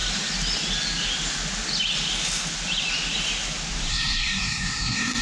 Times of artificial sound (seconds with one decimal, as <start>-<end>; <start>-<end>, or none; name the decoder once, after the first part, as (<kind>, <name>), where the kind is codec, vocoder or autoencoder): 3.9-5.2 (codec, SNAC)